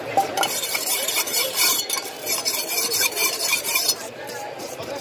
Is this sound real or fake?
fake